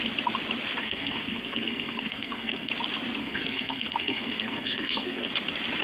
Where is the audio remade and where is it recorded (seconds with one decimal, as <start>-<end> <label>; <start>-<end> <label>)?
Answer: 0.0-0.8 recorded; 0.8-2.7 remade; 2.7-3.2 recorded; 3.2-5.3 remade; 5.3-5.8 recorded